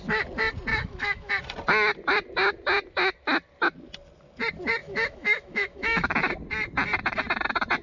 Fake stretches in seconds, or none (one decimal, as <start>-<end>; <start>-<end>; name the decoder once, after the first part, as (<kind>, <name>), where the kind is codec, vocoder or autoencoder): 0.7-1.3 (autoencoder, DAC-VAE); 4.8-6.3